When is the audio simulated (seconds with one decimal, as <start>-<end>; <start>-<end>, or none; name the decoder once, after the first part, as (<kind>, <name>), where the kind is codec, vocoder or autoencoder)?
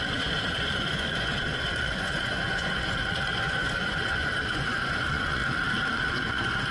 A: 0.0-5.4 (vocoder, Vocos); 6.1-6.7